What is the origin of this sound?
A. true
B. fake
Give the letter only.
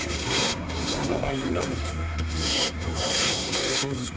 B